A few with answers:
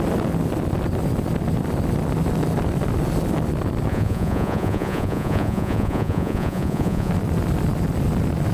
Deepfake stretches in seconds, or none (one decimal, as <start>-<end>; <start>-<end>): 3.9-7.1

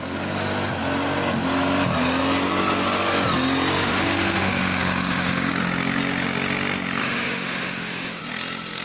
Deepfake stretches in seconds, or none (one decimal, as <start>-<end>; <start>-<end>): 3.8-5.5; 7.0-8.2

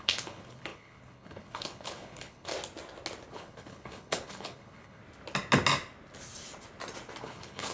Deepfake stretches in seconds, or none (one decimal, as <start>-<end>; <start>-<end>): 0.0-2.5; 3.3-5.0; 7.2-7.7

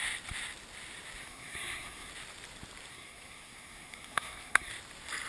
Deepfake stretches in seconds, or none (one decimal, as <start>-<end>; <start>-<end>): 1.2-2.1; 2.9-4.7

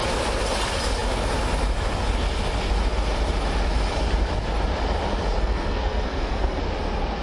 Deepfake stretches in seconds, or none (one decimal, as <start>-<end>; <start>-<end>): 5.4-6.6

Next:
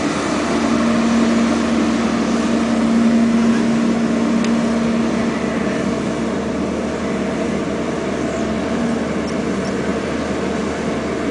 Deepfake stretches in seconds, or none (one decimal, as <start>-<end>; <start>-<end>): none